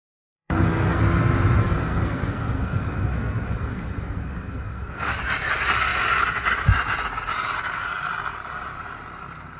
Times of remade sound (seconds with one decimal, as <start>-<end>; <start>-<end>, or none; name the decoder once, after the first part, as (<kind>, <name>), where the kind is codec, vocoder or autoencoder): 0.0-1.0 (codec, SNAC); 1.6-5.2